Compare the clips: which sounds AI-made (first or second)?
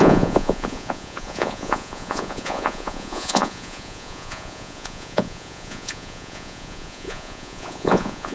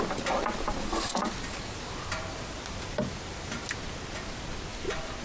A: first